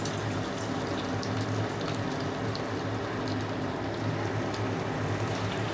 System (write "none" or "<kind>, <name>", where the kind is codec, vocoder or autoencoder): none